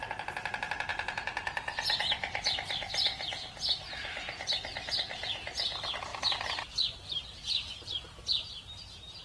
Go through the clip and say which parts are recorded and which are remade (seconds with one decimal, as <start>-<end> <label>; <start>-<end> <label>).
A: 0.0-6.1 recorded; 6.1-7.0 remade; 7.0-9.2 recorded